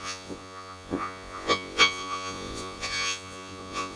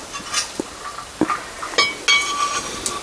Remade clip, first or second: first